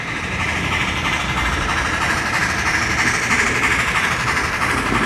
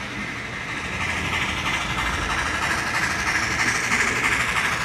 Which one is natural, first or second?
second